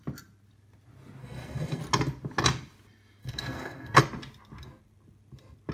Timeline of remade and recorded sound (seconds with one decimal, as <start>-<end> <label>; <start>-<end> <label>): 0.0-1.2 recorded; 1.2-1.8 remade; 1.8-3.2 recorded; 3.2-4.0 remade; 4.0-5.7 recorded